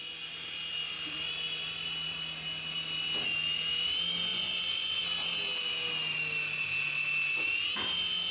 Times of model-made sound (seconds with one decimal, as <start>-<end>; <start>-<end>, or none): 4.3-5.0